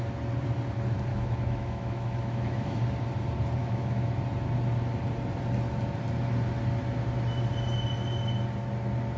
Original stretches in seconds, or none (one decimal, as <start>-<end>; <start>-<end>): 0.0-1.1; 2.8-3.6; 4.1-9.2